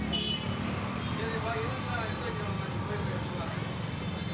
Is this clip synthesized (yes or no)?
no